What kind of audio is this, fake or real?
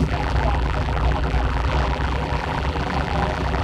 fake